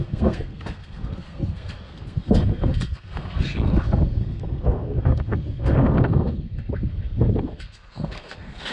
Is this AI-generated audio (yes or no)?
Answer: yes